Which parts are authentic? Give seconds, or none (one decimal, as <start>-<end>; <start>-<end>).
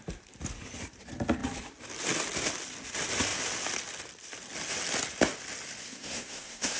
0.0-5.8